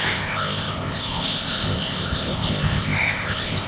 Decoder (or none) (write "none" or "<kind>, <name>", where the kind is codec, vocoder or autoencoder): codec, ZipCodec